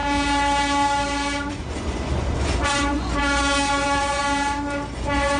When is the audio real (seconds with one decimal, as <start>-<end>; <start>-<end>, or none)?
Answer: 0.0-1.5; 4.2-4.9